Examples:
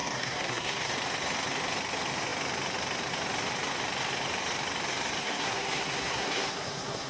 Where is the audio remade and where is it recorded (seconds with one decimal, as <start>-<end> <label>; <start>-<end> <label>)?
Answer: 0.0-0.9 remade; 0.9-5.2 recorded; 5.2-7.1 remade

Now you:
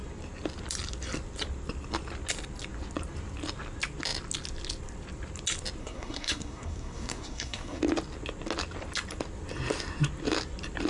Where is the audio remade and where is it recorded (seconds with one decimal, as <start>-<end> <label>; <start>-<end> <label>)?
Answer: 0.0-5.8 recorded; 5.8-7.8 remade; 7.8-10.9 recorded

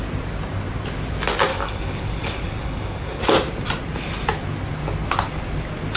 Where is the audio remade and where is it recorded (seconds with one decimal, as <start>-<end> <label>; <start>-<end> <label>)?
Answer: 0.0-1.5 recorded; 1.5-3.2 remade; 3.2-6.0 recorded

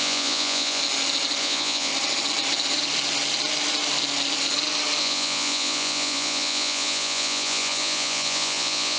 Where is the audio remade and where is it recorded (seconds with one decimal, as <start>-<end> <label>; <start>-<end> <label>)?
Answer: 0.0-0.8 remade; 0.8-1.4 recorded; 1.4-1.9 remade; 1.9-5.0 recorded; 5.0-9.0 remade